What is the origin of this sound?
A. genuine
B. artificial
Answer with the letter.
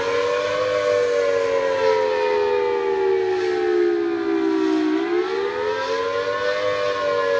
A